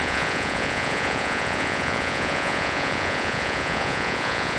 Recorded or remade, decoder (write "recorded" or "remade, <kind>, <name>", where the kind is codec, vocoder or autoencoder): remade, vocoder, Vocos